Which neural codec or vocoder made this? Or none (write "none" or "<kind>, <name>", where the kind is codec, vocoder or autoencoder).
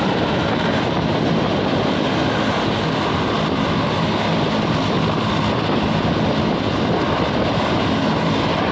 none